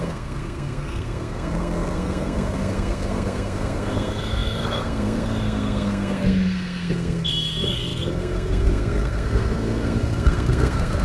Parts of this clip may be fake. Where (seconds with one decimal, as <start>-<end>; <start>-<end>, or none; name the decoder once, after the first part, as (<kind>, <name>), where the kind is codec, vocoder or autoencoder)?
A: 0.0-11.0 (codec, SNAC)